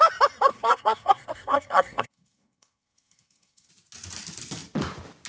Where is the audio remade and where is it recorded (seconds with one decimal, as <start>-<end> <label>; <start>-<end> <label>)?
0.0-0.5 recorded; 0.5-3.7 remade; 3.7-5.3 recorded